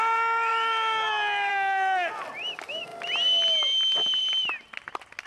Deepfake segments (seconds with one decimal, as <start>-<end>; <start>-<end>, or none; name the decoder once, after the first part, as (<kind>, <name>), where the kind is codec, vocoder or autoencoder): 1.5-2.1 (codec, SNAC)